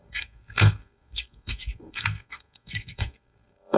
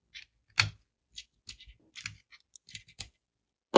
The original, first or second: second